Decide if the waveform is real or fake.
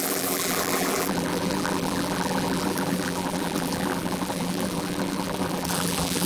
fake